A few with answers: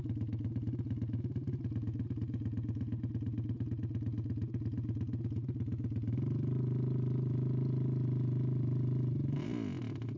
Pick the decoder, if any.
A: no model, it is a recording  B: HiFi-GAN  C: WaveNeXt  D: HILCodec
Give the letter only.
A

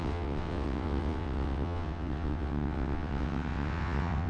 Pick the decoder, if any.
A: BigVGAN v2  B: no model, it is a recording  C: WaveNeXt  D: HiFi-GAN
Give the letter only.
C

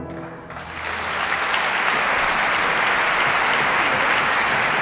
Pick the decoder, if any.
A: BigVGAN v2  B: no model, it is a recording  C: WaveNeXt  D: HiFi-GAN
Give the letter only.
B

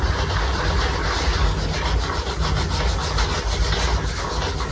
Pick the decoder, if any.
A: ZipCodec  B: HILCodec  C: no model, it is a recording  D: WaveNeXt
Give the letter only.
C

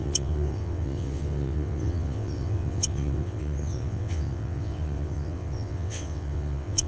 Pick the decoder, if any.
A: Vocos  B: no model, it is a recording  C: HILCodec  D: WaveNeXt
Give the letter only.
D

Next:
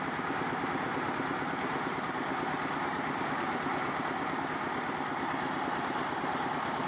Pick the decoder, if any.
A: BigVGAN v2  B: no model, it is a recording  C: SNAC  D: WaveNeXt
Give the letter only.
B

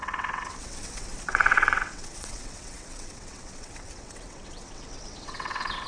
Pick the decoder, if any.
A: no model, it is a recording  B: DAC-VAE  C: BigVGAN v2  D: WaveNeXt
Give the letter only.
D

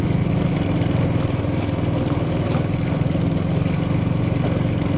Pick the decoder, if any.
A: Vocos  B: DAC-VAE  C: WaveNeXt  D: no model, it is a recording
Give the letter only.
D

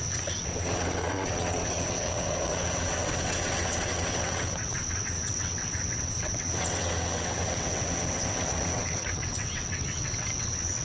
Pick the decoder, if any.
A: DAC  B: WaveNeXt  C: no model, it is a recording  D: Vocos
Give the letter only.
B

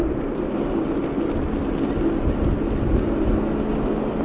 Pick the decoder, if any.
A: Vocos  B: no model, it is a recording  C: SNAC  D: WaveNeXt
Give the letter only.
B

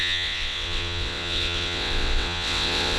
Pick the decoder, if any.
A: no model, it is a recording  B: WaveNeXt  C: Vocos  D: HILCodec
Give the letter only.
B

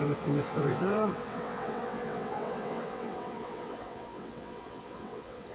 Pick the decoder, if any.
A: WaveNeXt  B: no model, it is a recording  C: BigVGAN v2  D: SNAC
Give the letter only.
A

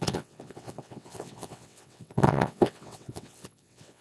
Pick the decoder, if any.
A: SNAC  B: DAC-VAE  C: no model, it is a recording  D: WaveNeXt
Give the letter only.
D